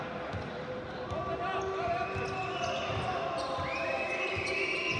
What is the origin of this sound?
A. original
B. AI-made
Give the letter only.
A